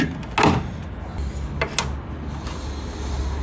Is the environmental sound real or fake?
real